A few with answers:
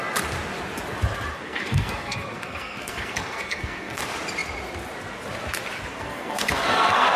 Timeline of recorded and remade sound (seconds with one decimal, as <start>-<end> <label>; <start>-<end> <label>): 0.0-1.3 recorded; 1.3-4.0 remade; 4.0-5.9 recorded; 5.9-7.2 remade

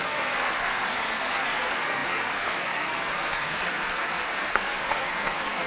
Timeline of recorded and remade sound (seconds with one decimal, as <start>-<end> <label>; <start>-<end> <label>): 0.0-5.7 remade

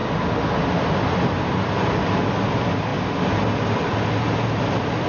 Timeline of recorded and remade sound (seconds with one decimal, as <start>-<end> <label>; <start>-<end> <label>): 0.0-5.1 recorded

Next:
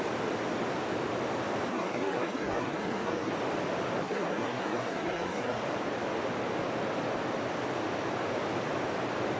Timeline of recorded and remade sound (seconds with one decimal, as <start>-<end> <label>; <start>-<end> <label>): 0.0-1.7 recorded; 1.7-3.3 remade; 3.3-4.0 recorded; 4.0-5.6 remade; 5.6-9.4 recorded